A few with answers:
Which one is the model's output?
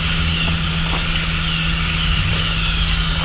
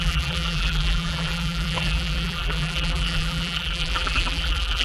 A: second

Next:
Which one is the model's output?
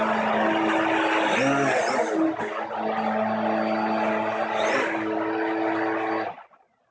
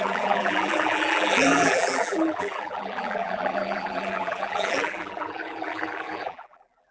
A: second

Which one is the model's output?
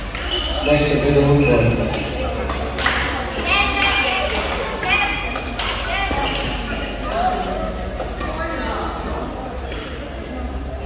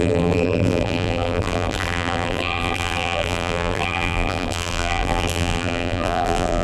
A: second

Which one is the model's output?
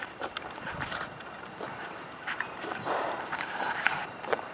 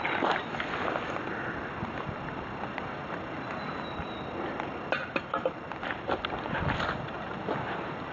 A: first